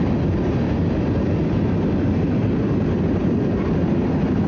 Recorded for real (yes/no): yes